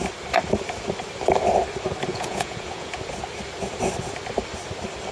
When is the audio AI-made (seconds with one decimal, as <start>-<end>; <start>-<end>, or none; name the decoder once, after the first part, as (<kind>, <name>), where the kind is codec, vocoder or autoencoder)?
2.1-3.0 (vocoder, Vocos)